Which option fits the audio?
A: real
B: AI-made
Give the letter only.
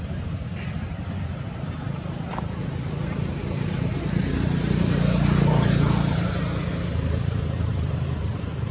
B